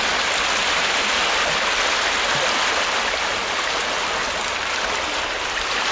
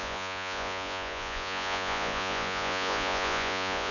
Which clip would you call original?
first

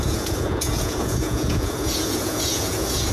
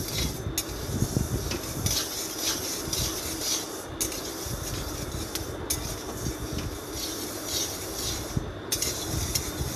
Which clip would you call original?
second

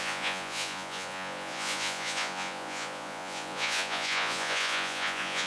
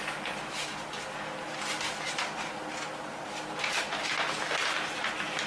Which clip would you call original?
second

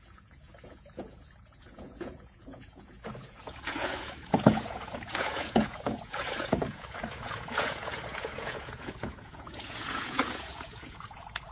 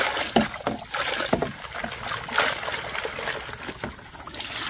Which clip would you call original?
second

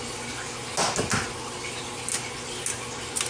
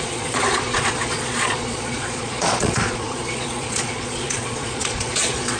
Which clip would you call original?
first